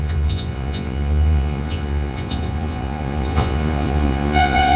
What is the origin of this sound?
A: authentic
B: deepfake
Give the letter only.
B